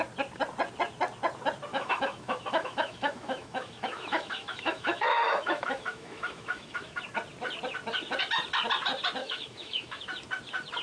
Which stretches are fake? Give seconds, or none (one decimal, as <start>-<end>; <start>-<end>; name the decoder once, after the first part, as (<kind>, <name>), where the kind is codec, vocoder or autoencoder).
1.7-7.0 (autoencoder, DAC-VAE); 9.2-10.0